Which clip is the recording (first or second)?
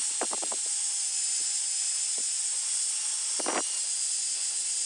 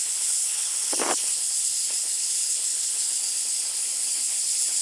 first